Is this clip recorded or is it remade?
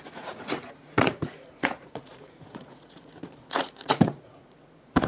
remade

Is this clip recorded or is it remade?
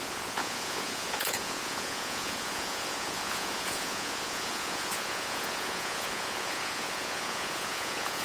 remade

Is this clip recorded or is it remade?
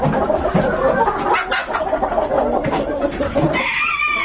recorded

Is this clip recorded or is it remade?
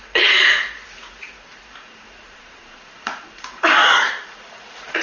remade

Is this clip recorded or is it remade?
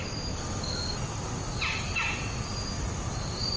recorded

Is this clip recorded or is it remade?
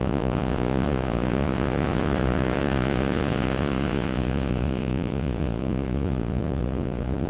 remade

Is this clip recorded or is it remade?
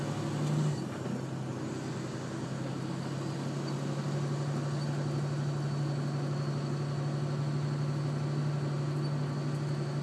recorded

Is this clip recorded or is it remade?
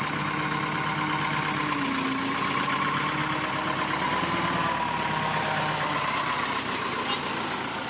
recorded